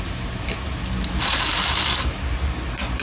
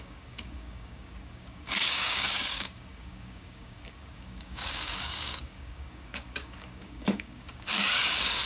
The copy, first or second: second